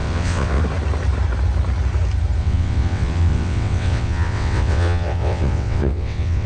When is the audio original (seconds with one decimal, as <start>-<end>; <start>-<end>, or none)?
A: 0.6-2.4